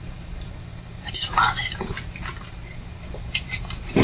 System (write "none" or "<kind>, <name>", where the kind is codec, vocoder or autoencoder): vocoder, BigVGAN v2